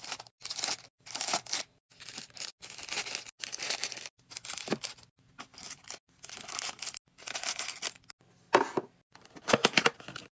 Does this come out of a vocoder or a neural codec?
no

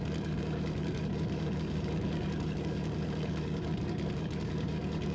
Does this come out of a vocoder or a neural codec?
yes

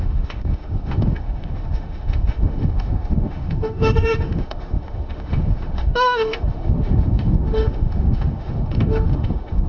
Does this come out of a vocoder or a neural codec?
yes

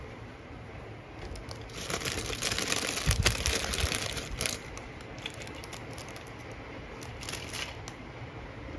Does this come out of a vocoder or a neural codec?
no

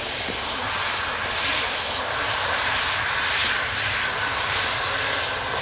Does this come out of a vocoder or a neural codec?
no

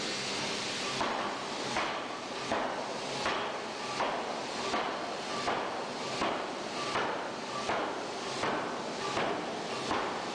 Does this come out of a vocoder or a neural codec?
no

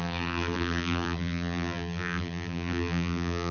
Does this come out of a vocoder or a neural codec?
yes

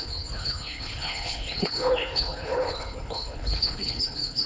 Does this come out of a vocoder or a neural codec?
yes